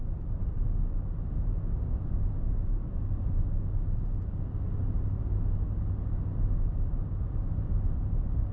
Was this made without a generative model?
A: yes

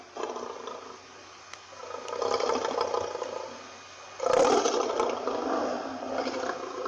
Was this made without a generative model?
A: yes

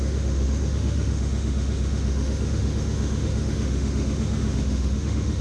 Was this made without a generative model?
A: no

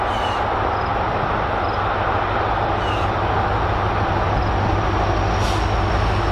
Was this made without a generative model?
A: yes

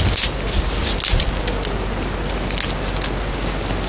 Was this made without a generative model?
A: yes